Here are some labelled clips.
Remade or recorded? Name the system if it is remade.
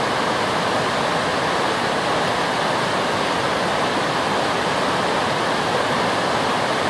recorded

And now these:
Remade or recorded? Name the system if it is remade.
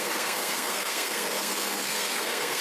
remade, codec, SNAC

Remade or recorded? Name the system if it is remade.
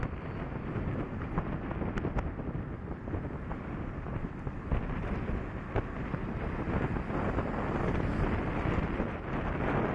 recorded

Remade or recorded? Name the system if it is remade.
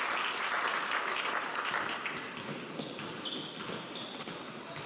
recorded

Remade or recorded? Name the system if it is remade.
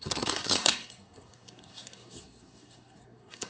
remade, codec, SNAC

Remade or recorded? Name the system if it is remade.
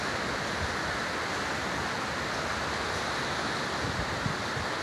recorded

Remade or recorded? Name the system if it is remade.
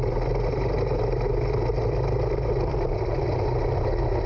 recorded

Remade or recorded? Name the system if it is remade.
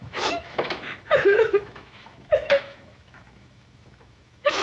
remade, autoencoder, DAC-VAE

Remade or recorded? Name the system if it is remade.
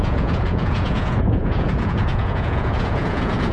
remade, vocoder, Vocos